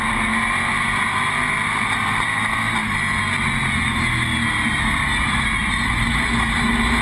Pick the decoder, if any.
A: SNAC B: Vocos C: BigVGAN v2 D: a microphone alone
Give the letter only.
D